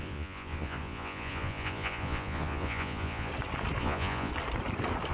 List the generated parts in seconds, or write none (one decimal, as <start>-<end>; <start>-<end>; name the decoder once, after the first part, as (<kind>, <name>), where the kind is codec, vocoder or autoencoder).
0.0-3.3 (vocoder, Vocos); 3.8-4.3